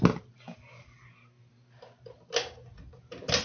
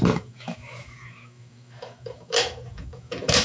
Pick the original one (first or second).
first